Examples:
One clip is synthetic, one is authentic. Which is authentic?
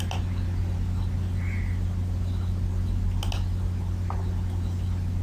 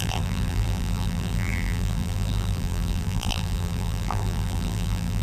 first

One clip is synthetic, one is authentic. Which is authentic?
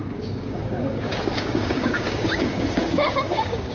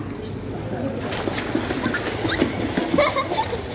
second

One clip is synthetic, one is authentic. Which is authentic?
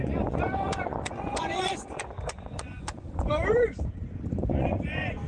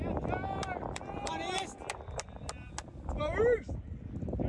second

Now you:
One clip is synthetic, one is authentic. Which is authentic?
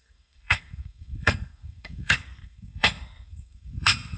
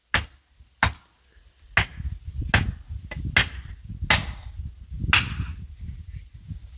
second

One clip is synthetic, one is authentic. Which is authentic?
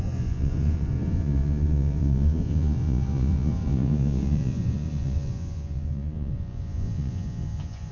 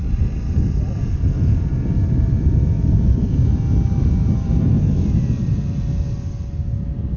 second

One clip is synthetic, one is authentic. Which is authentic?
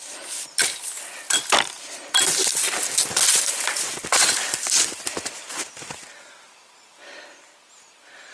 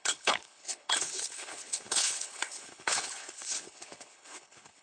first